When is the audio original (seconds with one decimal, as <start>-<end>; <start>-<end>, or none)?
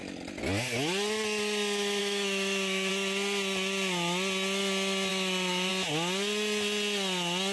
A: 0.0-2.0; 2.9-5.1; 5.7-7.5